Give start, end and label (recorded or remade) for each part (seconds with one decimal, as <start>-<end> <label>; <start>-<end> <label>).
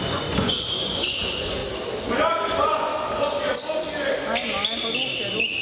0.0-1.6 remade; 1.6-2.5 recorded; 2.5-2.9 remade; 2.9-5.6 recorded